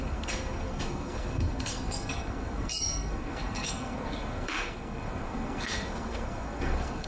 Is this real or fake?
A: fake